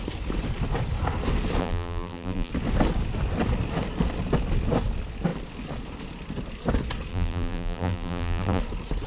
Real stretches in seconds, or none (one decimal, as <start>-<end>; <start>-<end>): 0.0-1.6; 2.5-7.1; 8.6-9.1

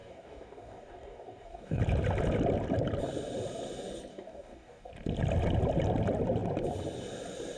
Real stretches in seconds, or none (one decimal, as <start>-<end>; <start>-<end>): 1.8-4.1; 4.9-7.6

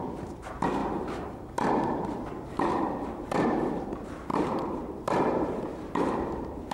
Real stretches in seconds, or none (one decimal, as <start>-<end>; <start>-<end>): 0.0-0.8; 3.8-4.3; 5.6-6.7